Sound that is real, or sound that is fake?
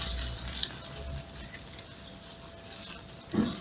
real